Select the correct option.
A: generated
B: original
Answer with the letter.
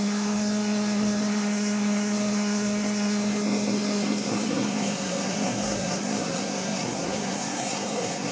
A